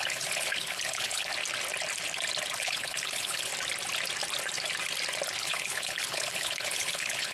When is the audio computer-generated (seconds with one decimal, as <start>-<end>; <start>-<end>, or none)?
0.0-1.3; 2.6-3.5; 5.4-7.3